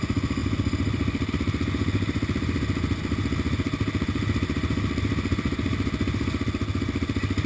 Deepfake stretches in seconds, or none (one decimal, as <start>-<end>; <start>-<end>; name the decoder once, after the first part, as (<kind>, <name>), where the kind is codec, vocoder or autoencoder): none